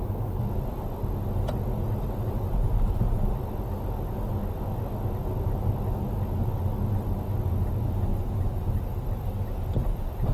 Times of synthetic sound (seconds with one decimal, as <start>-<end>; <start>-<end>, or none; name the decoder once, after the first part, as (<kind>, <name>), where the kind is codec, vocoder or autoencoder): 8.1-10.3 (vocoder, BigVGAN v2)